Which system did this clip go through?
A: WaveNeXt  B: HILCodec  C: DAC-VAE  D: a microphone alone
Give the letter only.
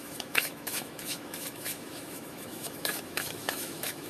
C